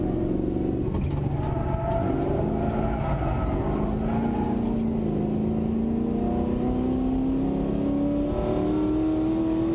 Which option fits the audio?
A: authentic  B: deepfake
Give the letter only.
A